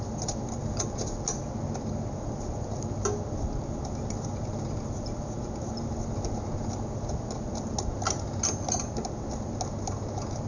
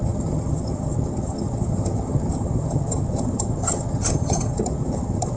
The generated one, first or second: second